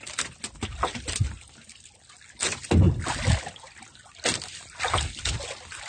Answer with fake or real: real